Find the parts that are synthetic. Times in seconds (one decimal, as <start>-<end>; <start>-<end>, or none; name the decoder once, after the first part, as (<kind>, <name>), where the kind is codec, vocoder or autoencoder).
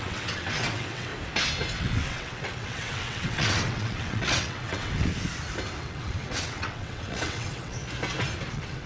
0.0-1.1 (vocoder, WaveNeXt); 1.8-5.1; 5.8-7.8; 8.5-8.9